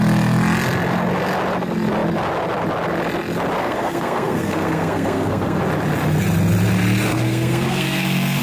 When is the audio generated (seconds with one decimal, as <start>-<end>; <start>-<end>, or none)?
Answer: 3.6-5.6; 7.1-8.4